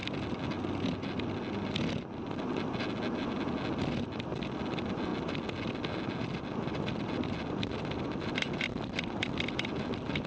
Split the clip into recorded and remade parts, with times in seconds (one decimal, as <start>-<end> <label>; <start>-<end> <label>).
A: 0.0-10.3 recorded